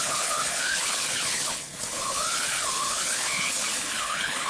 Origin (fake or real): fake